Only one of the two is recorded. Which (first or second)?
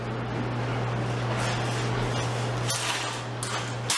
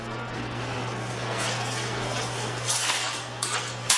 first